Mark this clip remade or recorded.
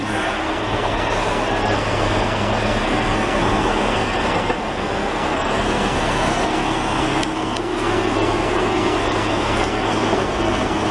remade